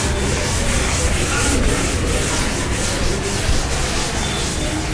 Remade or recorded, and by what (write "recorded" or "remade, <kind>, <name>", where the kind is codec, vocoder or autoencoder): recorded